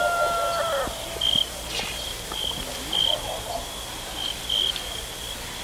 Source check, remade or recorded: recorded